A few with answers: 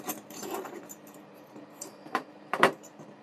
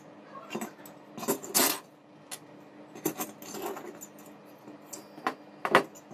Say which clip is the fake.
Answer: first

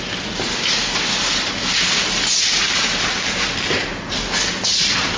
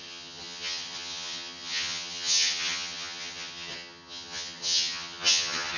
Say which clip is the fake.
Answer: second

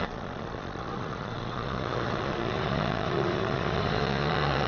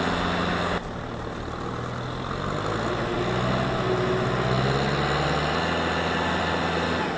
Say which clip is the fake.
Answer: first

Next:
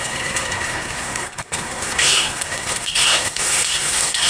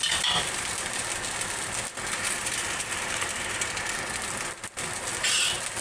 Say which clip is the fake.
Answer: first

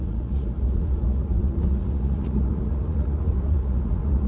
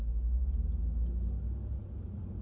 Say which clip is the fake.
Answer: first